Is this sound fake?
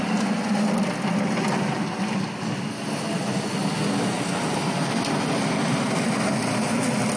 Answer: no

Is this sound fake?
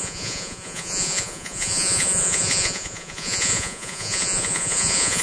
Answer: yes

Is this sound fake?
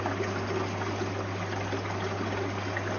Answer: no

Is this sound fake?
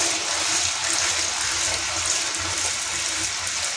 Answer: no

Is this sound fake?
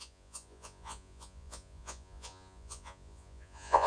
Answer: yes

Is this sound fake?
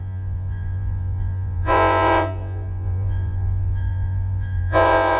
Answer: yes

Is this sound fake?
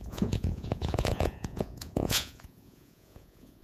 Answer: yes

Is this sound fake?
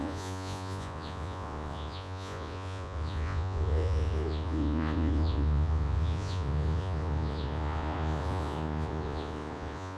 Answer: yes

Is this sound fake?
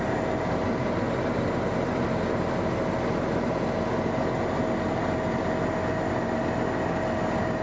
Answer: no